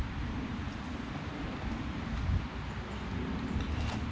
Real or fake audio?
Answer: real